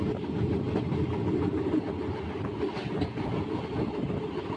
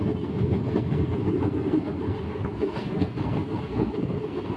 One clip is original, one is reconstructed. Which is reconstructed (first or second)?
second